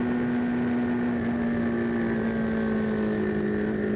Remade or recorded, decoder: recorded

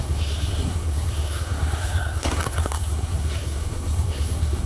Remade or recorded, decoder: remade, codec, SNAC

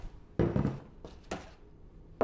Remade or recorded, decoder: recorded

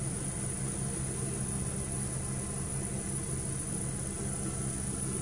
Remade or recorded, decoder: recorded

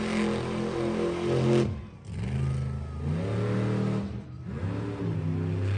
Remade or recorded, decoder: recorded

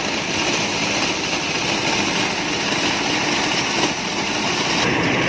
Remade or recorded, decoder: recorded